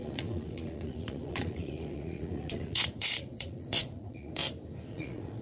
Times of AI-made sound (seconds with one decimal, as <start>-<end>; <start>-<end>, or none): 0.0-4.4; 4.9-5.4